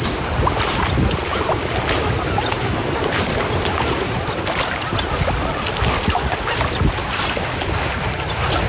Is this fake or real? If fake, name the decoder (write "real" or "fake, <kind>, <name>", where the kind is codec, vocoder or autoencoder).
real